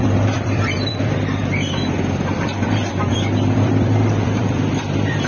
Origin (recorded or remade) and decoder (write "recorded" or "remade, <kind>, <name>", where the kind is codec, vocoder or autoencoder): remade, vocoder, BigVGAN v2